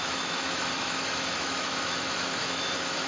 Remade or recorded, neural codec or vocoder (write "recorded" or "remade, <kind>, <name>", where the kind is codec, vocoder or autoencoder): remade, autoencoder, DAC-VAE